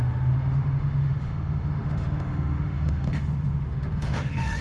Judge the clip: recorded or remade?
remade